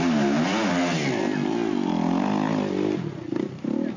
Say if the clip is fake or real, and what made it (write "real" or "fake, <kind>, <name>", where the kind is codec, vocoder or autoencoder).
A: real